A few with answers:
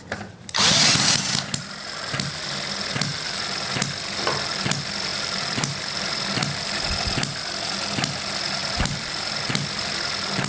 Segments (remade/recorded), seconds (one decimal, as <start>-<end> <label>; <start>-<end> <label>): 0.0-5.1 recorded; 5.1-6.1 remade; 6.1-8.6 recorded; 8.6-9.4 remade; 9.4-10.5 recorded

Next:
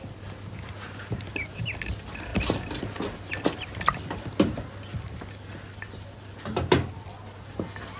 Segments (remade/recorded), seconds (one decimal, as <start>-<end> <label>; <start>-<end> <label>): 0.0-8.0 recorded

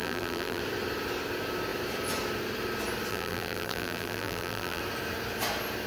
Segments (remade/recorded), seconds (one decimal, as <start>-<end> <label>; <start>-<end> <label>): 0.0-0.6 remade; 0.6-3.1 recorded; 3.1-4.8 remade; 4.8-5.9 recorded